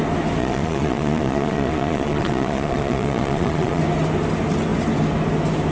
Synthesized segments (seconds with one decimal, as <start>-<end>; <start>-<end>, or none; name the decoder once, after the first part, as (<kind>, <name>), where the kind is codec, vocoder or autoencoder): 0.4-3.8 (vocoder, Vocos)